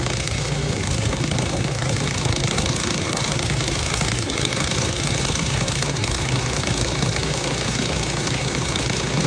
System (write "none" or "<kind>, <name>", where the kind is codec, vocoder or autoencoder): codec, SNAC